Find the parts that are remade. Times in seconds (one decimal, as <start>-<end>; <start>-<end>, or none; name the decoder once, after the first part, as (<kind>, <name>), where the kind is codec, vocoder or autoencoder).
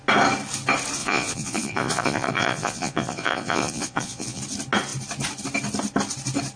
1.0-4.4 (vocoder, Vocos)